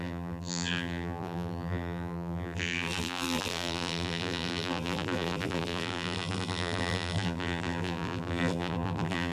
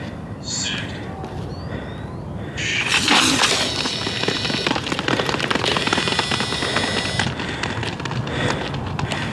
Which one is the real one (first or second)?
second